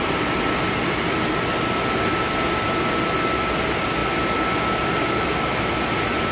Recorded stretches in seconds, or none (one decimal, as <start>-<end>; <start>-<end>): 0.0-6.3